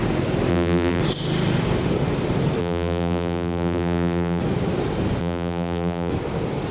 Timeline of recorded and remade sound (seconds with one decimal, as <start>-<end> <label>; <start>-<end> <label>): 0.0-0.5 recorded; 0.5-1.0 remade; 1.0-2.6 recorded; 2.6-4.4 remade; 4.4-5.2 recorded; 5.2-6.1 remade; 6.1-6.7 recorded